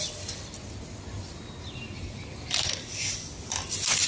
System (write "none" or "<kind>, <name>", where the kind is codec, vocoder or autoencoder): none